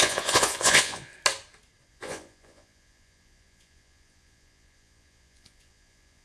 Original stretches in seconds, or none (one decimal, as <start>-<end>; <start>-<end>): 1.1-1.9